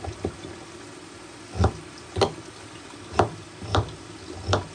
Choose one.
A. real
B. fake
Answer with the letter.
A